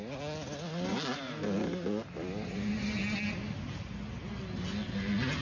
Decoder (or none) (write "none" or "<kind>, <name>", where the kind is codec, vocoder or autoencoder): none